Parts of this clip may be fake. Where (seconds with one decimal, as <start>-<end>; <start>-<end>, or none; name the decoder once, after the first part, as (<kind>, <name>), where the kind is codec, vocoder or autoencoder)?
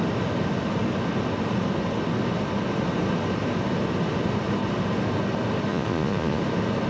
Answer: 5.7-6.4 (vocoder, Vocos)